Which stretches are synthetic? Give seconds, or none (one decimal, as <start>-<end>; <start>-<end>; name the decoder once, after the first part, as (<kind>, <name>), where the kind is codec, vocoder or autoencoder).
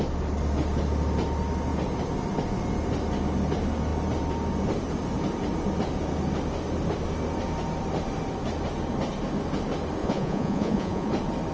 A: 10.0-11.1 (vocoder, Vocos)